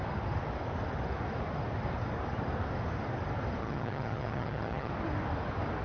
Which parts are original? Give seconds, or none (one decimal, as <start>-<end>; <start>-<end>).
0.0-3.6; 4.9-5.8